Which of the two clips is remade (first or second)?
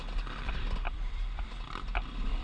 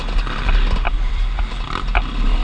first